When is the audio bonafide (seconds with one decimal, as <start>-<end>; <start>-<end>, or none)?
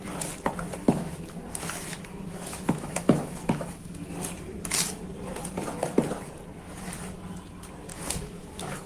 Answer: 0.0-0.8; 4.1-7.9